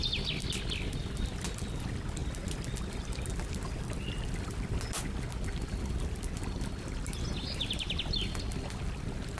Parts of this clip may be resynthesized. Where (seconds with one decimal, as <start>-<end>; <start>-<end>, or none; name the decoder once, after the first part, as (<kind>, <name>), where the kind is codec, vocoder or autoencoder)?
none